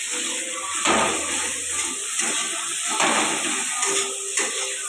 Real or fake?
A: real